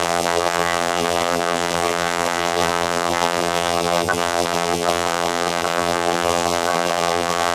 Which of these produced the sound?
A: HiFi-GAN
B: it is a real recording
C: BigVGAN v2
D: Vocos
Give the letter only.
C